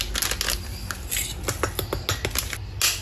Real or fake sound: real